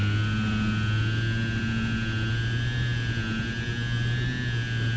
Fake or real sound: real